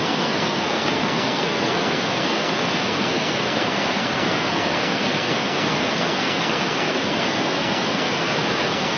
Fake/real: fake